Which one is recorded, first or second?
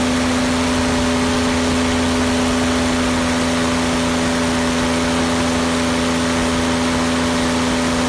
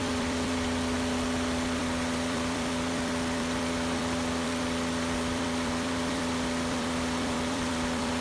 first